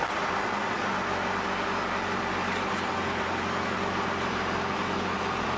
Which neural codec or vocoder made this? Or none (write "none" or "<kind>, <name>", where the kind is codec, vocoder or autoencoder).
none